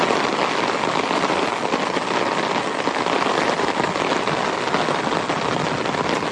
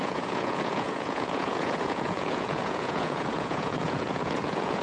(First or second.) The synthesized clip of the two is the second